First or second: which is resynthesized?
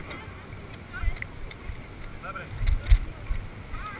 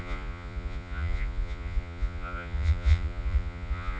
second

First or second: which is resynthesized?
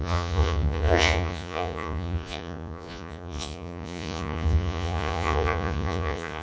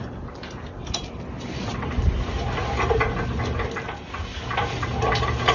first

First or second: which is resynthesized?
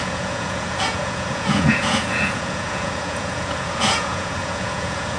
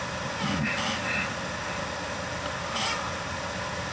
first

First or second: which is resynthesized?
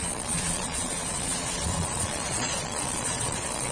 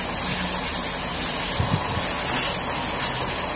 first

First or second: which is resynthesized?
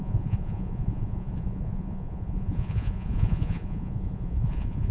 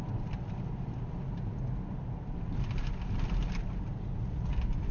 first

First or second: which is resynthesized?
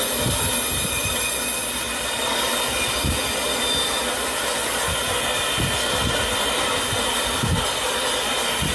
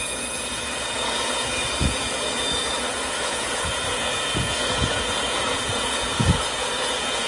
second